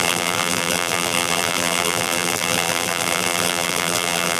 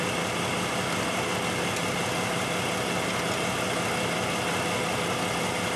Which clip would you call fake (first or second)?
first